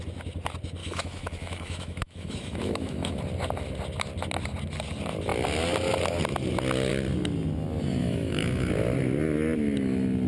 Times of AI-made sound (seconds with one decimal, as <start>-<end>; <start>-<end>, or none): 0.8-3.2; 8.0-8.7